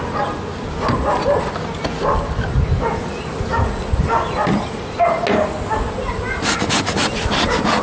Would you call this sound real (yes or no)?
yes